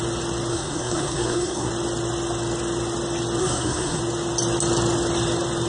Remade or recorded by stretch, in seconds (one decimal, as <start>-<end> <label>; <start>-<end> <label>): 0.0-0.5 recorded; 0.5-1.7 remade; 1.7-3.4 recorded; 3.4-4.0 remade; 4.0-5.7 recorded